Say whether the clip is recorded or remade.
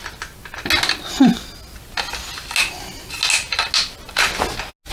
recorded